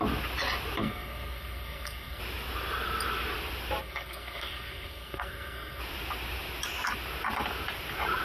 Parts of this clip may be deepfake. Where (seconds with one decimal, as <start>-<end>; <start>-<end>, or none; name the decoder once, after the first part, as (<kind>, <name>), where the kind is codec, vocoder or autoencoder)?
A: 0.8-2.2 (codec, SNAC); 3.8-5.8